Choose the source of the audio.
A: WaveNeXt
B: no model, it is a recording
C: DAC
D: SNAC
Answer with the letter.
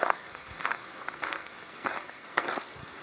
D